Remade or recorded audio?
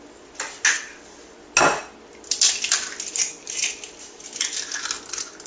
recorded